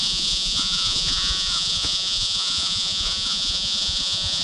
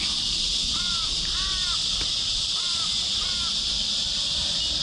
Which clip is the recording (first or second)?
second